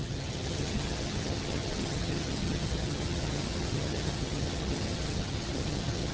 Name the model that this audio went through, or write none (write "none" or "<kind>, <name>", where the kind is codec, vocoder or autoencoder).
vocoder, HiFi-GAN